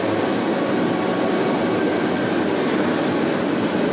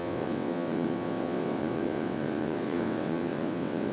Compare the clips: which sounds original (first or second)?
first